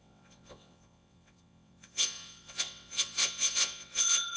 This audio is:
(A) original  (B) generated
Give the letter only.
B